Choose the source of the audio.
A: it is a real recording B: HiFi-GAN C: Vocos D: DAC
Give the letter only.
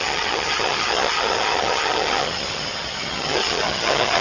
B